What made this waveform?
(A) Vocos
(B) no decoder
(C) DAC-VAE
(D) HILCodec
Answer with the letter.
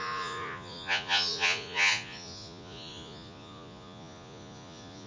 A